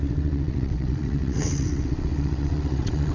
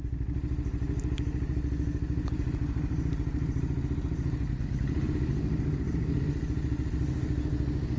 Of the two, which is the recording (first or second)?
second